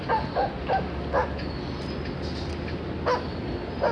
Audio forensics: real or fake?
real